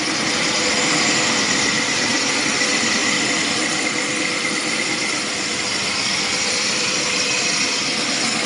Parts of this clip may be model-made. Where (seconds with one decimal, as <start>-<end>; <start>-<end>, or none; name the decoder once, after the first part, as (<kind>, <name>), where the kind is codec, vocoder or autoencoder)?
3.0-7.0 (vocoder, BigVGAN v2)